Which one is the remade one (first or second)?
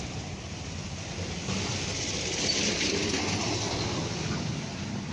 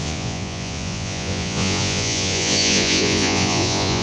second